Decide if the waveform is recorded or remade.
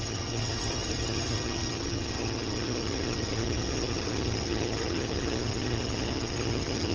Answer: remade